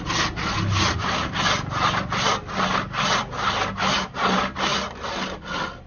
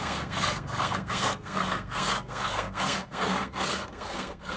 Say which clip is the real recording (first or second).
first